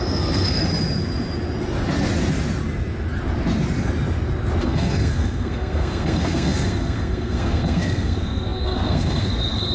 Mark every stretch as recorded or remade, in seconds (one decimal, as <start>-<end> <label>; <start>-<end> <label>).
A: 0.0-0.6 remade; 0.6-4.6 recorded; 4.6-9.7 remade